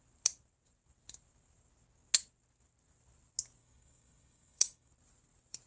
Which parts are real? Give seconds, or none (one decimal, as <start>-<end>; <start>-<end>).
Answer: 0.0-3.6; 4.9-5.7